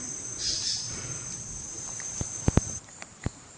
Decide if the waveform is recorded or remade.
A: remade